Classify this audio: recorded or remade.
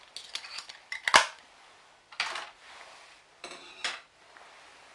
recorded